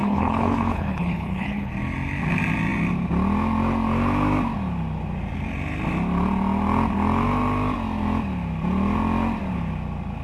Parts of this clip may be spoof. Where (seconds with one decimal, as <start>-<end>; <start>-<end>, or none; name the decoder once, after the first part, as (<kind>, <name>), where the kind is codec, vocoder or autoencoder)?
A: 0.0-1.7 (codec, HILCodec)